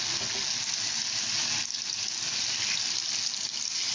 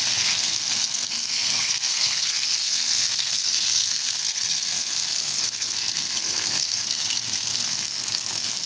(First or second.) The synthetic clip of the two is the second